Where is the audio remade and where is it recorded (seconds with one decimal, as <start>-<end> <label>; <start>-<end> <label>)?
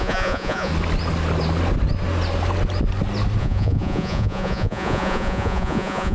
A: 0.0-0.7 remade; 0.7-3.4 recorded; 3.4-6.1 remade